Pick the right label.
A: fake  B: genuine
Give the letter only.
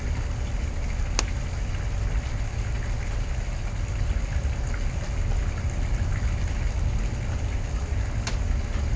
B